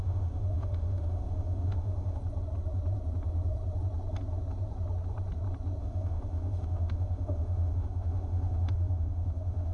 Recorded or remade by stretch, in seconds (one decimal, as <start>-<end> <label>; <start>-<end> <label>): 0.0-2.2 remade; 2.2-5.8 recorded; 5.8-9.7 remade